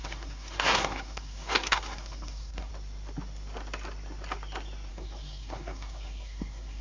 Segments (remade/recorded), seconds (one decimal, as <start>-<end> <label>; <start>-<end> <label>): 0.0-2.7 remade; 2.7-4.9 recorded; 4.9-6.8 remade